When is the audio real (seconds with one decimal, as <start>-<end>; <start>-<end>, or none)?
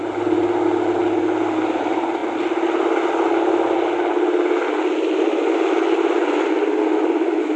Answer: 0.0-7.6